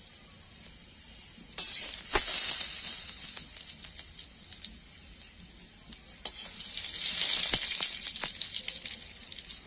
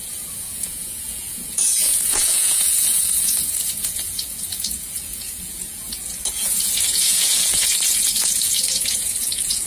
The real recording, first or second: first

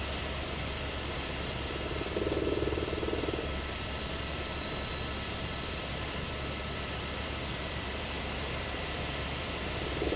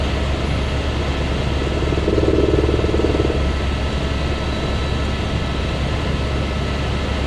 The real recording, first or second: second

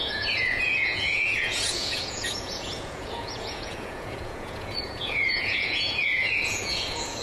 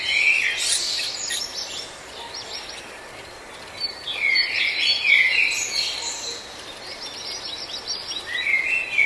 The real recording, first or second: second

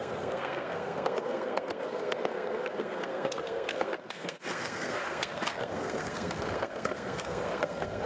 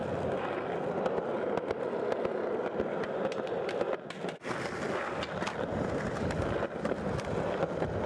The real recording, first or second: second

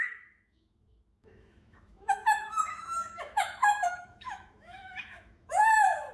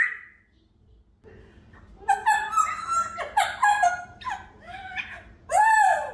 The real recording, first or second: second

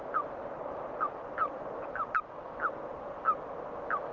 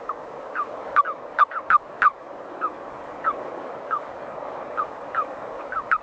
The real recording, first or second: first